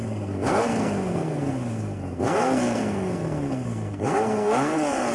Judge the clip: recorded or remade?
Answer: remade